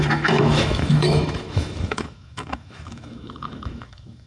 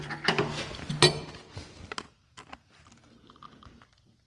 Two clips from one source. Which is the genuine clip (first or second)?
second